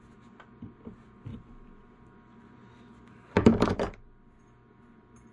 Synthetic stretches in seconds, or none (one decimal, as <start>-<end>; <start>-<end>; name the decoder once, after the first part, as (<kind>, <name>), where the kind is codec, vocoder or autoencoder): 1.3-4.4 (vocoder, BigVGAN v2)